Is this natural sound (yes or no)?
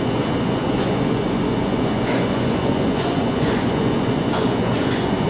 no